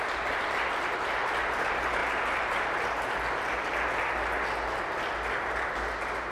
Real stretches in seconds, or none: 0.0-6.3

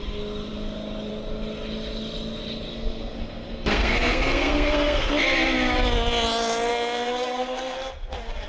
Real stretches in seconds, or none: 0.0-2.7; 5.1-6.7

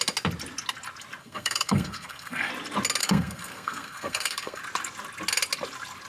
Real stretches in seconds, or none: 0.0-1.2; 2.5-3.0; 4.6-6.1

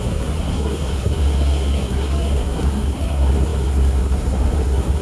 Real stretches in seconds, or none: none

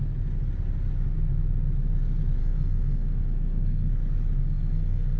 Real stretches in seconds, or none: 0.0-2.4; 3.9-4.4

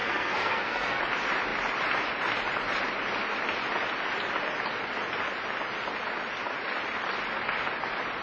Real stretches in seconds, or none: 1.0-8.2

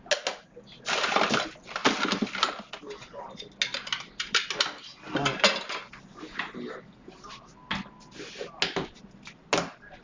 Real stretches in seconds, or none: 0.0-10.0

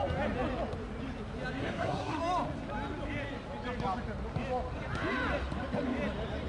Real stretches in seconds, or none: 0.0-1.6; 2.2-6.5